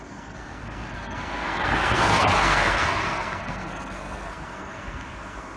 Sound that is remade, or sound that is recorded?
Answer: remade